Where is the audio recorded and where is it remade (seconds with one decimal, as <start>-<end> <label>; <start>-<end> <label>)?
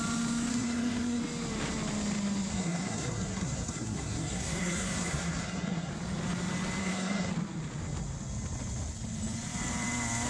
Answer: 0.0-0.5 recorded; 0.5-1.2 remade; 1.2-2.5 recorded; 2.5-5.9 remade; 5.9-6.8 recorded; 6.8-7.3 remade; 7.3-10.3 recorded